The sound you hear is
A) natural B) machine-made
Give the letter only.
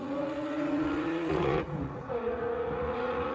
B